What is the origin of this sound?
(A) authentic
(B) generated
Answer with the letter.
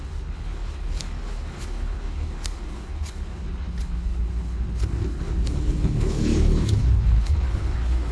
B